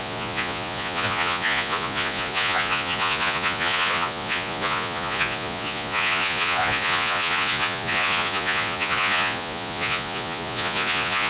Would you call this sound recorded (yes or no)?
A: no